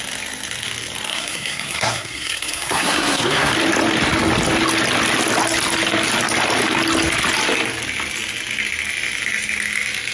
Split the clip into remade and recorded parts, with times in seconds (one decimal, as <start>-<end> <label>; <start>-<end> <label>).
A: 0.0-1.1 recorded; 1.1-3.5 remade; 3.5-10.1 recorded